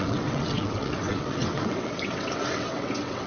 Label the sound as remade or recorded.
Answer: remade